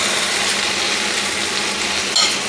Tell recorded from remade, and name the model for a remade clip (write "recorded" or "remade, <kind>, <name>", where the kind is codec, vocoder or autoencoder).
recorded